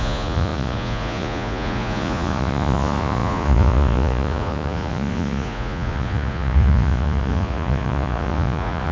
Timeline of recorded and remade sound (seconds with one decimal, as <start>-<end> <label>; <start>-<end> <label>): 0.0-8.9 remade